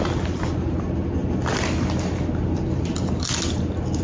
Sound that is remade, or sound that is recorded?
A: recorded